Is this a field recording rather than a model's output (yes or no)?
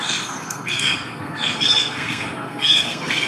no